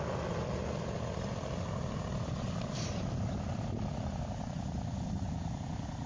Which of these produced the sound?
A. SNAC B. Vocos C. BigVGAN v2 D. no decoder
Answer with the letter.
D